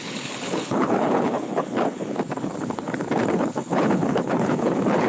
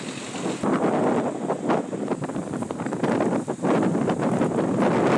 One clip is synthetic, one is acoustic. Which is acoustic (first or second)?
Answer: second